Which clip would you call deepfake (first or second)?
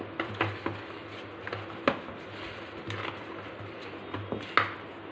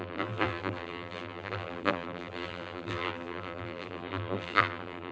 second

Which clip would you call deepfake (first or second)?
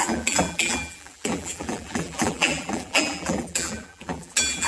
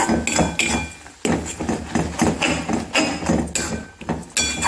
first